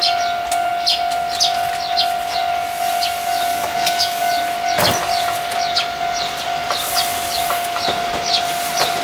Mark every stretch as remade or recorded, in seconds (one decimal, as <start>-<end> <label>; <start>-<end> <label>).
0.0-3.5 recorded; 3.5-4.3 remade; 4.3-9.0 recorded